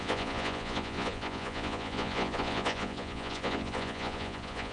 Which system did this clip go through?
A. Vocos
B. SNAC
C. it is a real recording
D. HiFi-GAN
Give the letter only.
A